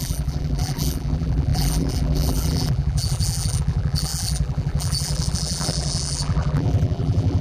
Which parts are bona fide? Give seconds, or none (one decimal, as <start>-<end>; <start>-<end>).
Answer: none